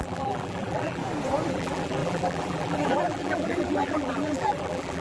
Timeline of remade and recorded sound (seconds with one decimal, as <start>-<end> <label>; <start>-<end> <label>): 0.0-1.0 remade; 1.0-1.5 recorded; 1.5-5.0 remade